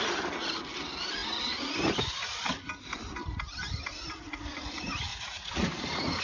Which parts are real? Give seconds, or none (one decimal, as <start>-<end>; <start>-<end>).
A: 0.0-5.1; 5.7-6.2